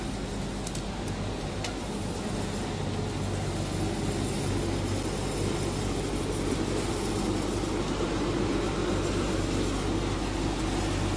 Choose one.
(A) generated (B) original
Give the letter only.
B